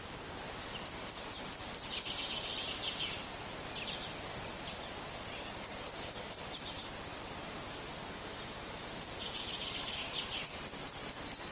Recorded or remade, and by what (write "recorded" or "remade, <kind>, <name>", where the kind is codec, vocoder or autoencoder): recorded